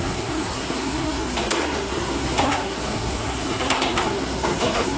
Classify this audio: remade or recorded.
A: remade